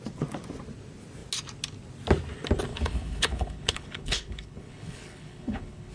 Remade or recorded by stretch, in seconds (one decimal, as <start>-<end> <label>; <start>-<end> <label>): 0.0-2.7 recorded; 2.7-5.9 remade